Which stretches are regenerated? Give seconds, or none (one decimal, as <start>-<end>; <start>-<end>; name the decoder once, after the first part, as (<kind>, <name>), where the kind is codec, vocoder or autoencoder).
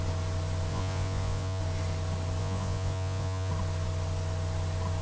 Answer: 0.7-1.6 (vocoder, Vocos); 2.4-3.5